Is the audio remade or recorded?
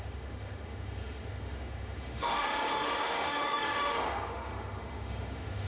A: remade